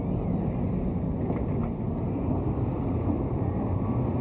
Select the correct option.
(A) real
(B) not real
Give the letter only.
A